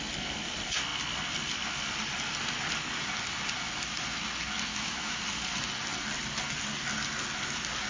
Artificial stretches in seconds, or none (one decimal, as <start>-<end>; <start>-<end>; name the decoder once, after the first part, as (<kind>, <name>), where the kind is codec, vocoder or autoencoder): 4.7-5.2 (autoencoder, DAC-VAE)